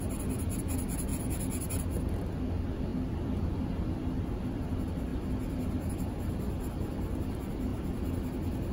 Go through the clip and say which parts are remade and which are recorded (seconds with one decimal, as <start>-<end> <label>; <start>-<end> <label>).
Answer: 0.0-8.7 recorded